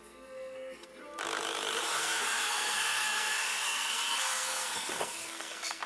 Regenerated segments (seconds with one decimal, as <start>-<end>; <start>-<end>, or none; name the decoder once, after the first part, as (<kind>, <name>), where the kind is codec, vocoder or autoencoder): 0.0-0.9 (codec, SNAC); 1.8-5.9